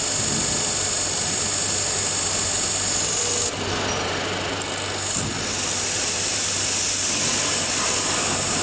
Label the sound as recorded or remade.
recorded